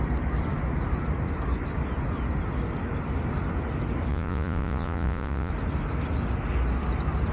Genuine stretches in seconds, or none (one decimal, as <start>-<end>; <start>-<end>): 0.0-4.1; 5.5-7.3